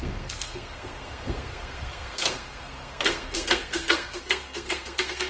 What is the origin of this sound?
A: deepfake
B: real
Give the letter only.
A